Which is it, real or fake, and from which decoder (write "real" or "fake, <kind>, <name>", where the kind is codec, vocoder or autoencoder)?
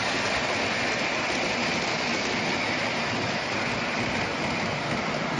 real